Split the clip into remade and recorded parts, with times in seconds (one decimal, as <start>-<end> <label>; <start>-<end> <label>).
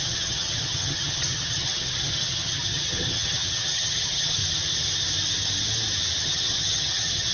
0.0-4.4 remade; 4.4-6.2 recorded; 6.2-7.3 remade